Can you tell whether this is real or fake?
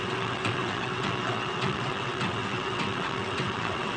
fake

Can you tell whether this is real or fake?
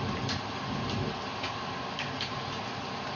real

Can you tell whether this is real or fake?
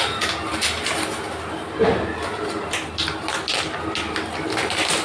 real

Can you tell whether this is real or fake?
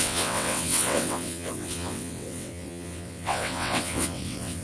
fake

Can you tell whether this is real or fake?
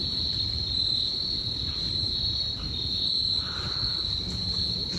real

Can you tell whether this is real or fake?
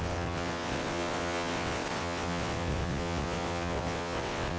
fake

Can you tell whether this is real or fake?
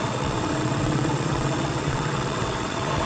fake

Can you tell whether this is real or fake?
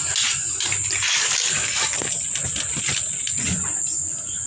real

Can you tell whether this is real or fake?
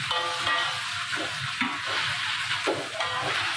real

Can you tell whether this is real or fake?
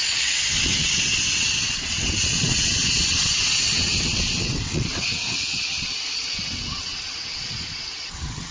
fake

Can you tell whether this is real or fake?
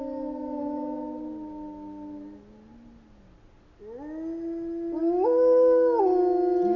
real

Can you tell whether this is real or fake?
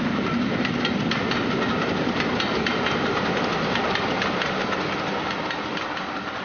real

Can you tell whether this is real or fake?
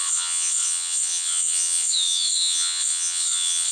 fake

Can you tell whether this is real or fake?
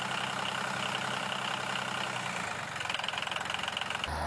real